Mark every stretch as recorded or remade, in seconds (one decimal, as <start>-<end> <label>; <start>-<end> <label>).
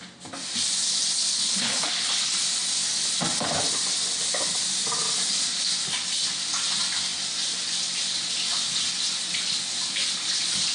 0.0-1.3 recorded; 1.3-1.9 remade; 1.9-10.7 recorded